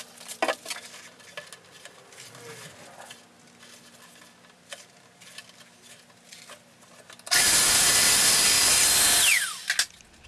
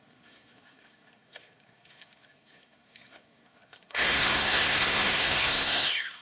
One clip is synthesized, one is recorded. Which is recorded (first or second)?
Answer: first